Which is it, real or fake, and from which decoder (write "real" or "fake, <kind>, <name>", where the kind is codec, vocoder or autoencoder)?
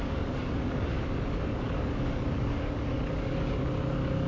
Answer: fake, codec, DAC